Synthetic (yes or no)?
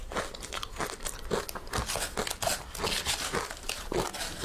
no